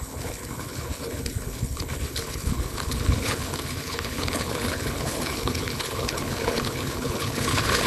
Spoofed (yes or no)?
yes